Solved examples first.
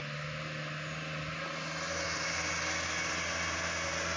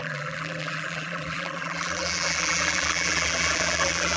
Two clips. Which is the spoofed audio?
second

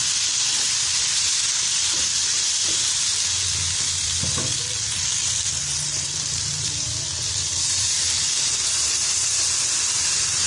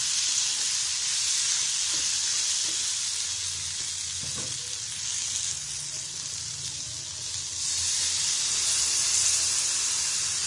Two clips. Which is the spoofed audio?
first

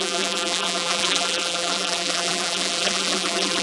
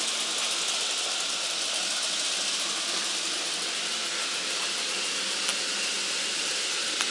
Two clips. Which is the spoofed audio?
first